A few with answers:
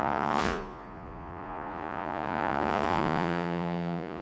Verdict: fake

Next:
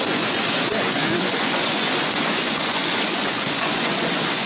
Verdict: fake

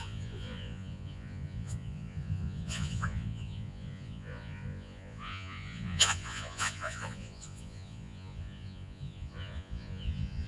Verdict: fake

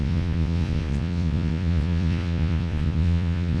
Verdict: fake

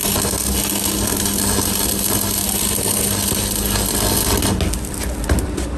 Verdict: real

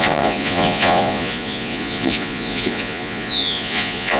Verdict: fake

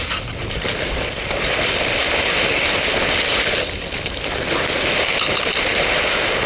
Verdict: real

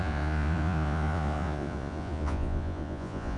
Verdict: fake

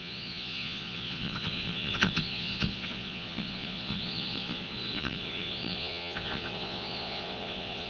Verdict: fake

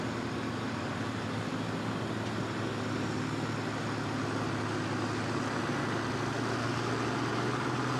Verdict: real